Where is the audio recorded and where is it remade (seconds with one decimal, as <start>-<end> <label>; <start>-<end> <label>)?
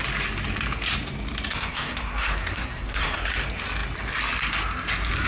0.0-1.5 recorded; 1.5-3.3 remade; 3.3-5.3 recorded